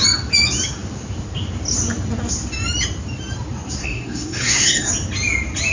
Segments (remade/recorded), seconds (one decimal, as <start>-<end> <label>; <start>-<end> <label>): 0.0-3.8 recorded; 3.8-4.9 remade; 4.9-5.7 recorded